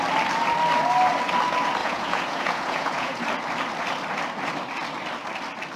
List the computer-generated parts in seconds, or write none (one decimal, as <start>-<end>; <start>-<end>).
1.8-3.2